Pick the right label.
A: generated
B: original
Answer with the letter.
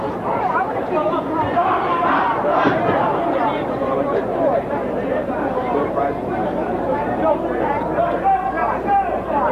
A